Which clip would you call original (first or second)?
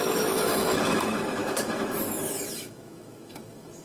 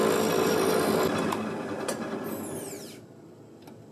second